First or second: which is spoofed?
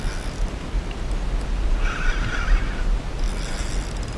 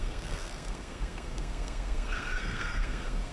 second